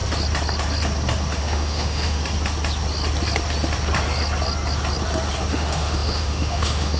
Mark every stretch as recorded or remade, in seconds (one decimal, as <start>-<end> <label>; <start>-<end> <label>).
0.0-1.4 recorded; 1.4-2.2 remade; 2.2-5.5 recorded; 5.5-7.0 remade